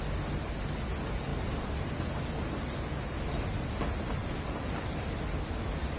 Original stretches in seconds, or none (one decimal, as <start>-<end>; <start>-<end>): 0.0-6.0